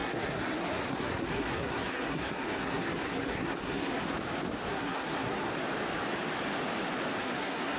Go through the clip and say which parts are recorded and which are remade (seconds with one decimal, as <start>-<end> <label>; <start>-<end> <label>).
0.0-4.0 remade; 4.0-4.7 recorded; 4.7-5.5 remade; 5.5-7.2 recorded; 7.2-7.8 remade